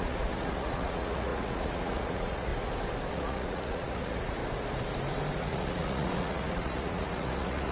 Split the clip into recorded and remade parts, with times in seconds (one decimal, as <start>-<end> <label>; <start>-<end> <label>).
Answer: 0.0-2.5 remade; 2.5-3.1 recorded; 3.1-4.4 remade; 4.4-5.4 recorded; 5.4-7.7 remade